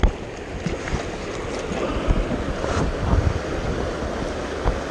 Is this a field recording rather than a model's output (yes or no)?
yes